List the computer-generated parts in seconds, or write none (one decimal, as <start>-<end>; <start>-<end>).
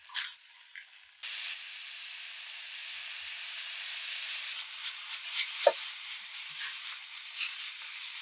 0.0-0.8; 3.3-7.0